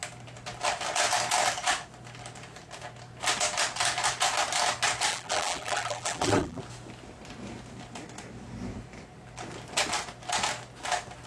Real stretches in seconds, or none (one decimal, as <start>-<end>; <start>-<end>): 0.0-5.1; 6.6-11.3